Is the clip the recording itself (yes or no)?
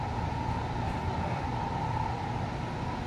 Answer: yes